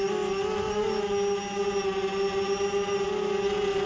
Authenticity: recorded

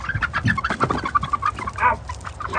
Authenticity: recorded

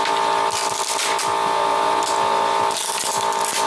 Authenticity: recorded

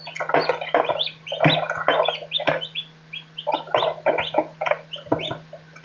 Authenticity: recorded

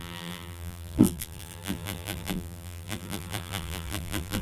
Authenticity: remade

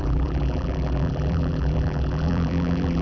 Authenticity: remade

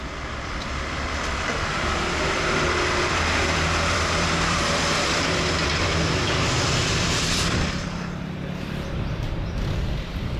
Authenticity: remade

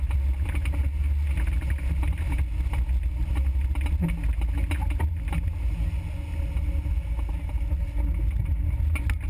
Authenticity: recorded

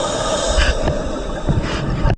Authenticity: recorded